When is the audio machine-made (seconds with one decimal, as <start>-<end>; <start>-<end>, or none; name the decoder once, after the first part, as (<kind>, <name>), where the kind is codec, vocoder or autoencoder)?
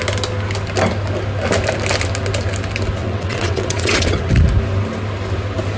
3.0-4.3 (vocoder, WaveNeXt)